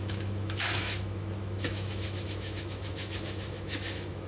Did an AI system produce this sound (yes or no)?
yes